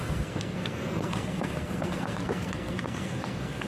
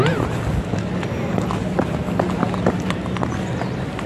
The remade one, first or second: first